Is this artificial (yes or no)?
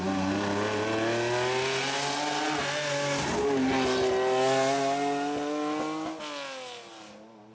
no